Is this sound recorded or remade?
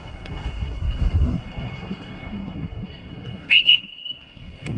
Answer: remade